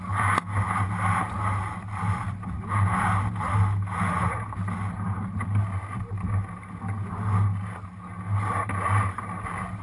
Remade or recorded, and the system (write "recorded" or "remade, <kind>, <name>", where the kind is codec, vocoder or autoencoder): recorded